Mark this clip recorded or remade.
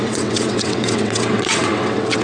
remade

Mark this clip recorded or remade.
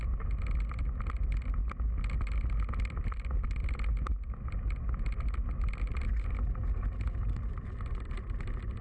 recorded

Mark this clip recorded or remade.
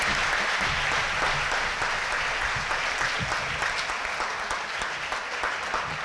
recorded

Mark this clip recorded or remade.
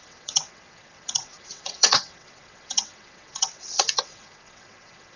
remade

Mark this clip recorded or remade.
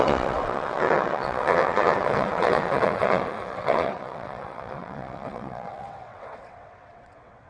remade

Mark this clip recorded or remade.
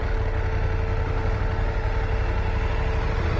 recorded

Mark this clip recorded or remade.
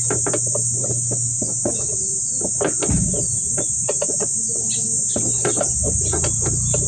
recorded